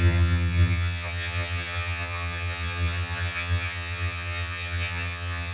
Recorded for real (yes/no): no